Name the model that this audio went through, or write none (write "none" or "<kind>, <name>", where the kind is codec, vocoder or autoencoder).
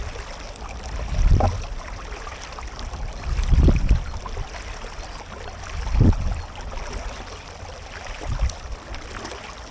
none